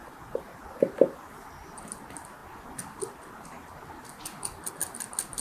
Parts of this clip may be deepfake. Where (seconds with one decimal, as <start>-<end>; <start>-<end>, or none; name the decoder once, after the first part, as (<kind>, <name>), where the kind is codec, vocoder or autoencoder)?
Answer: none